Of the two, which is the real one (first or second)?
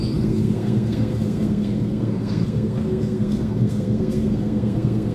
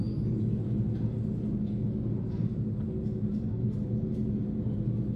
second